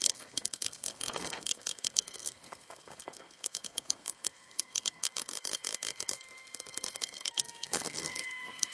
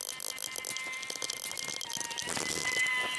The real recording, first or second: second